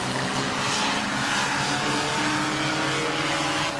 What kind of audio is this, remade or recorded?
recorded